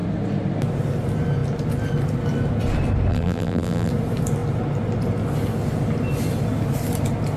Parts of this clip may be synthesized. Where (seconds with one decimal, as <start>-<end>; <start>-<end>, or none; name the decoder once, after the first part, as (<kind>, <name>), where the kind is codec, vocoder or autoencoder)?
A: 3.1-3.9 (vocoder, BigVGAN v2)